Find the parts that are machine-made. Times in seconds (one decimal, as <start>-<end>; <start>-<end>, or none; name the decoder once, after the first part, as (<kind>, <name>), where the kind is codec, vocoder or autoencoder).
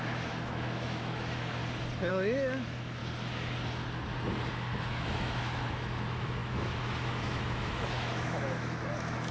0.0-1.6 (autoencoder, DAC-VAE); 2.1-3.0; 4.5-9.3